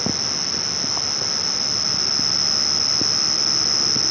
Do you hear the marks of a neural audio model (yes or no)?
no